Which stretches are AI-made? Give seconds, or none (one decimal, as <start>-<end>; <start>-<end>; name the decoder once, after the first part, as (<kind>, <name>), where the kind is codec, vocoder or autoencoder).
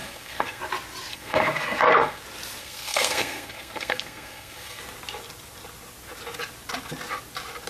0.0-0.6 (codec, SNAC); 1.1-2.2; 2.6-4.8